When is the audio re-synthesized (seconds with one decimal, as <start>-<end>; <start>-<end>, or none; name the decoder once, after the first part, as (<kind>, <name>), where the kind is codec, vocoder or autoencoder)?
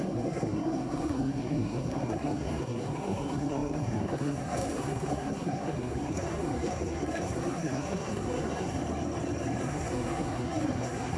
0.0-8.8 (codec, SNAC); 9.6-11.2